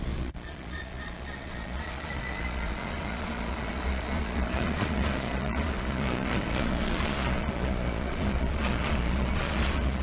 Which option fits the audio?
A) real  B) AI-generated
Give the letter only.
B